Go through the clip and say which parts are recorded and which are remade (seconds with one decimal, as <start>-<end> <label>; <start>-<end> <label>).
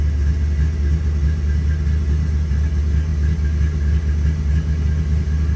0.0-5.6 recorded